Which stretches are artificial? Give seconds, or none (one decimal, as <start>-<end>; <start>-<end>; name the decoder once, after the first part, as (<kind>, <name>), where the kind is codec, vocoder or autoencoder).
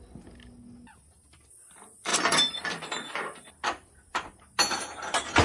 2.1-3.4 (vocoder, BigVGAN v2)